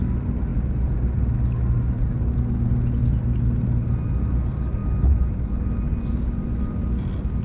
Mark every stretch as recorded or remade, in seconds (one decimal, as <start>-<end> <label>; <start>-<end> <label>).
0.0-7.4 recorded